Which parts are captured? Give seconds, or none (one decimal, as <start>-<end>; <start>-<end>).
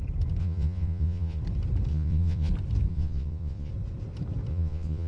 0.0-0.4; 1.4-1.9; 2.5-2.9; 3.7-4.5